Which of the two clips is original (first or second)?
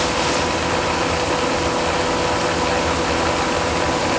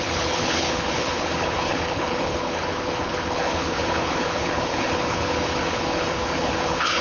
first